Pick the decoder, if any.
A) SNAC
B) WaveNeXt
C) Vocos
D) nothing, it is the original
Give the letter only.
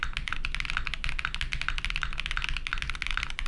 D